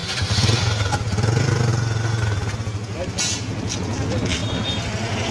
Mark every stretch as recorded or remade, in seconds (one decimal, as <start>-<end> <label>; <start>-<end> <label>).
0.0-5.3 recorded